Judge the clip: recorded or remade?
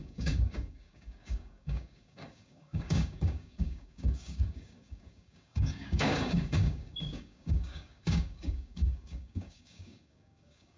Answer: remade